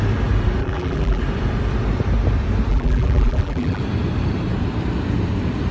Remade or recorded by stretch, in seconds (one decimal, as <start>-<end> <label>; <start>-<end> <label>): 0.0-0.6 recorded; 0.6-1.2 remade; 1.2-2.7 recorded; 2.7-3.8 remade; 3.8-5.7 recorded